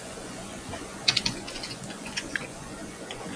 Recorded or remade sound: remade